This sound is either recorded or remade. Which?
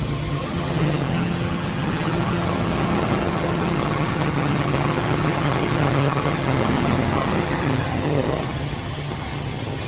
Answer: remade